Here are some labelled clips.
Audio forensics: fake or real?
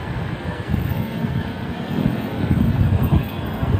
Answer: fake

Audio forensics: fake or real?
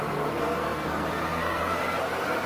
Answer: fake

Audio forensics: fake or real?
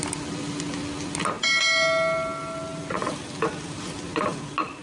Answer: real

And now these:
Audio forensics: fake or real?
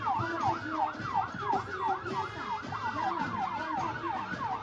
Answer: real